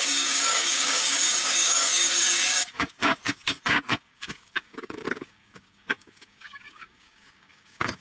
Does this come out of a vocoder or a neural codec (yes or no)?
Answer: yes